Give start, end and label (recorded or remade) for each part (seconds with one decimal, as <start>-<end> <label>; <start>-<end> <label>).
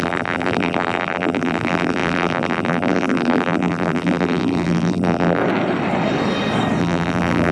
0.0-5.4 remade; 5.4-6.8 recorded; 6.8-7.5 remade